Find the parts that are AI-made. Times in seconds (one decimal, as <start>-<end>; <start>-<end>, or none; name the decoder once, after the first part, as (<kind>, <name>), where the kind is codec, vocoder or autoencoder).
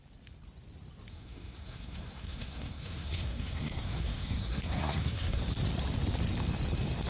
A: 1.1-5.4 (codec, SNAC)